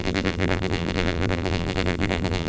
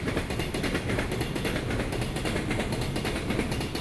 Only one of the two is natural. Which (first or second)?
second